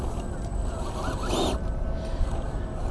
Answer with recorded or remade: recorded